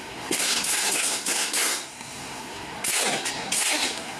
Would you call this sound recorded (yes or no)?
no